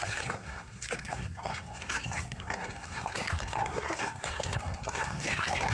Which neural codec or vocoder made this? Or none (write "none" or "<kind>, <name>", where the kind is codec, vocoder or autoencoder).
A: codec, SNAC